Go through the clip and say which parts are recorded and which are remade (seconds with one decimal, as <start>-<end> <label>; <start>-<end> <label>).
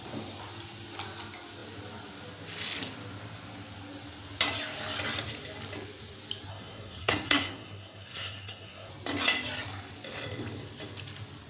0.0-6.5 recorded; 6.5-8.9 remade; 8.9-11.5 recorded